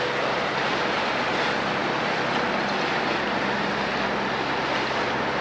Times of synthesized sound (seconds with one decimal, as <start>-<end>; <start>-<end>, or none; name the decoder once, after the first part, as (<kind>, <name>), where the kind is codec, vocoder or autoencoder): none